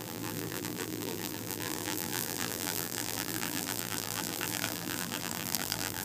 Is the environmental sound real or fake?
fake